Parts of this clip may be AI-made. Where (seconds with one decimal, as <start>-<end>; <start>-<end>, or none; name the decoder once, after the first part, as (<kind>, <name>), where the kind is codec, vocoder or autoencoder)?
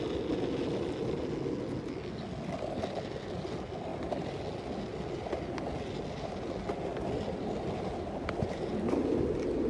none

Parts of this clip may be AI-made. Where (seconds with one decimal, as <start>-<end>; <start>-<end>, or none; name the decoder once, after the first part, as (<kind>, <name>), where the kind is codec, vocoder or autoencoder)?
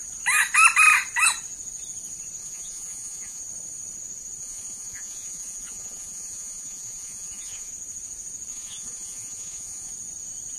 2.4-3.4 (vocoder, Vocos); 4.4-7.7; 8.5-9.9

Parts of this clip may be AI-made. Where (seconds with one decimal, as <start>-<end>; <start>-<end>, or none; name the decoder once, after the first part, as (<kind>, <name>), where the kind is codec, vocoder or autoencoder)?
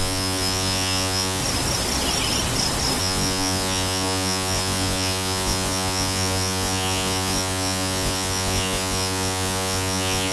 0.0-1.4 (vocoder, Vocos); 3.0-10.3